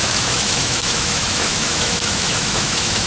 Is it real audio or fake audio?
fake